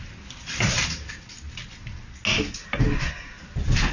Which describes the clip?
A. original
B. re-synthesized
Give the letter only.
A